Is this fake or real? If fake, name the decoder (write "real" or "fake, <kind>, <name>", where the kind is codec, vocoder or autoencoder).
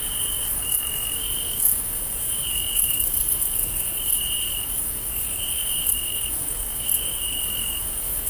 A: fake, codec, DAC